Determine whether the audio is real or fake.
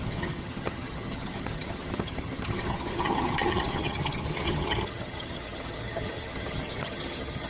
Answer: fake